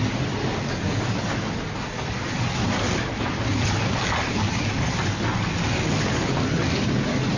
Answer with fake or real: real